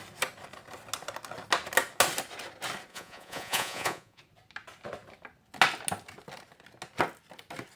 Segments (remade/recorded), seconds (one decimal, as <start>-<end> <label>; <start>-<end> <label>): 0.0-2.9 recorded; 2.9-4.2 remade; 4.2-7.8 recorded